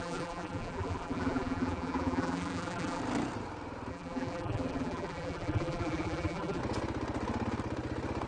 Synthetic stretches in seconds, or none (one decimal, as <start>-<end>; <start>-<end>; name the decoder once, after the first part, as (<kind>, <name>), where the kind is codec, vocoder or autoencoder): 0.0-3.0 (vocoder, BigVGAN v2); 3.9-6.6